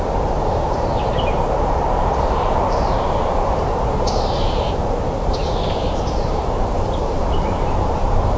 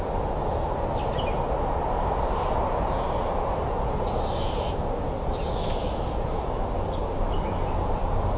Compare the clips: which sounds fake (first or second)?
first